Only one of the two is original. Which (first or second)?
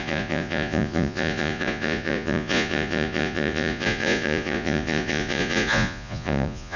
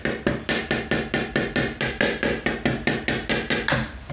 second